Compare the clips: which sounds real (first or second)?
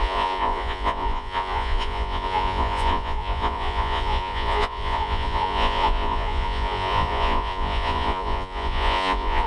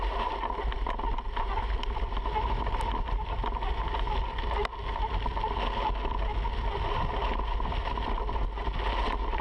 second